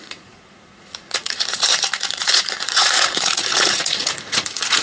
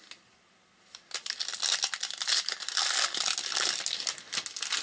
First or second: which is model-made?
first